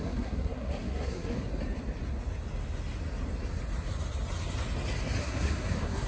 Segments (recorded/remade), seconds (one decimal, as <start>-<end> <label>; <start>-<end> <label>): 0.0-1.5 remade; 1.5-5.2 recorded; 5.2-6.1 remade